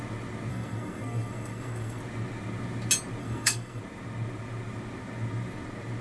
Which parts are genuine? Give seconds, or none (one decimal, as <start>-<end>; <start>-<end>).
0.0-0.5; 2.0-3.2; 3.8-6.0